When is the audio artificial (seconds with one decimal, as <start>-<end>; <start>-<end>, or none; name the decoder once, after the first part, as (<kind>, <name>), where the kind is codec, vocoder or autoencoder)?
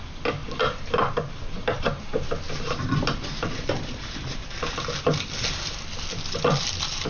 none